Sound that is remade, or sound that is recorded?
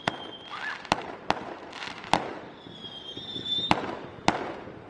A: recorded